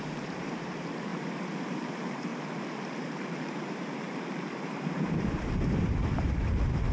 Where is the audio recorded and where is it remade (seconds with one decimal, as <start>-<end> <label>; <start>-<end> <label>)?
0.0-1.1 remade; 1.1-1.9 recorded; 1.9-2.3 remade; 2.3-3.0 recorded; 3.0-6.9 remade